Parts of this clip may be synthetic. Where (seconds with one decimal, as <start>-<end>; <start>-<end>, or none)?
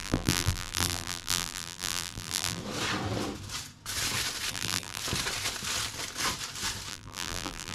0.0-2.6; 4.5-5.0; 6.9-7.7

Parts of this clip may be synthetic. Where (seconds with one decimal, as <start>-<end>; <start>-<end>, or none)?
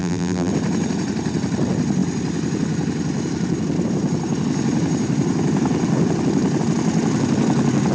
0.0-0.5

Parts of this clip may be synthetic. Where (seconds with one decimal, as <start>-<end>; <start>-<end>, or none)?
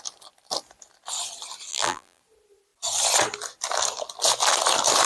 1.7-2.2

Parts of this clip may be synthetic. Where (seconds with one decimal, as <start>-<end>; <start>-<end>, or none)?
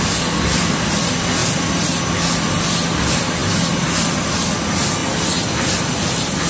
none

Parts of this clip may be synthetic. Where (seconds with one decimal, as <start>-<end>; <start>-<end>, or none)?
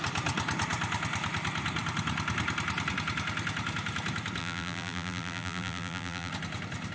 4.4-6.3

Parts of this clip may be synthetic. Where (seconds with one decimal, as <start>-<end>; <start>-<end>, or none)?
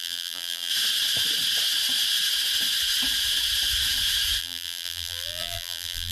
0.0-0.7; 4.4-6.1